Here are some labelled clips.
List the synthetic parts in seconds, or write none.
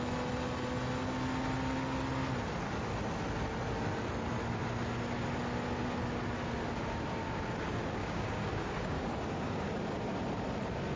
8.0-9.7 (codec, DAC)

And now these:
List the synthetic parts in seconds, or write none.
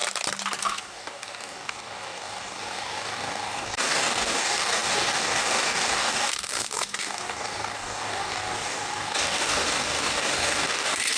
0.6-11.2 (codec, DAC)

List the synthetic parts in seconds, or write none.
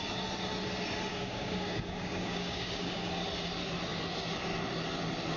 1.1-3.1 (codec, DAC)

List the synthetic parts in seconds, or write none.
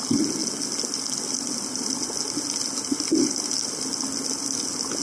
none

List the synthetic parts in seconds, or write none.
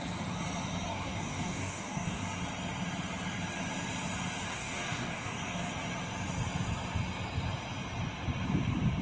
0.9-2.2 (codec, DAC); 4.5-5.7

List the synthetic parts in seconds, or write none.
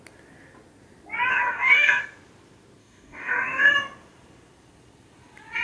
1.3-2.0 (codec, DAC); 2.8-3.7